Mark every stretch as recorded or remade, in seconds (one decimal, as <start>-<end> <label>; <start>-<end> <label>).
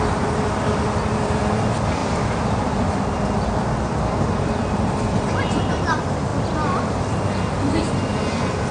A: 0.0-8.7 remade